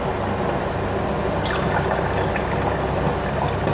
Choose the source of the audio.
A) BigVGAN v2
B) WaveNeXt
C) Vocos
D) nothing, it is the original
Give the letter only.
D